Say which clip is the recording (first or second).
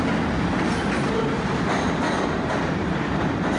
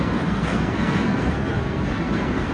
first